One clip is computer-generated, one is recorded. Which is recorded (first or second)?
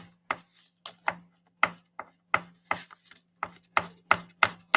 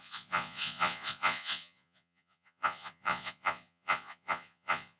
first